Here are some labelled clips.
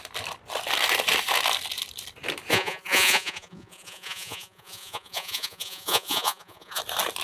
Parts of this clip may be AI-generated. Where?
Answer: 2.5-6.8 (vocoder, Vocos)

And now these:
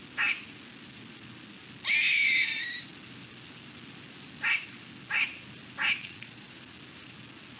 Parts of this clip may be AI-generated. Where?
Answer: 6.0-6.5 (vocoder, Vocos)